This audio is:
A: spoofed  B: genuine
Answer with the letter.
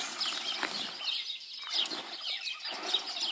B